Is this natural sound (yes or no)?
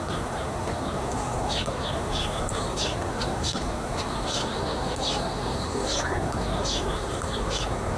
no